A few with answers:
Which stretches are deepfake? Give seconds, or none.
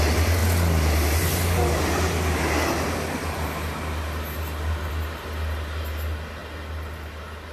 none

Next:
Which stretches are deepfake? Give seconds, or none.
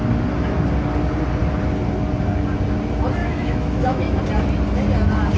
3.2-4.2 (autoencoder, DAC-VAE)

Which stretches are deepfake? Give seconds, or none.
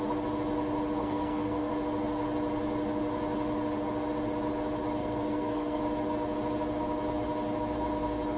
1.0-1.7 (codec, SNAC); 5.0-5.8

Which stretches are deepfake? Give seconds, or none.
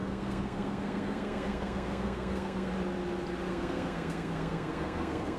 0.0-2.7 (codec, SNAC); 3.5-5.4